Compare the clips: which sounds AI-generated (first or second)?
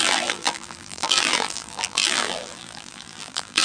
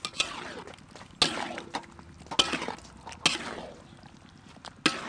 first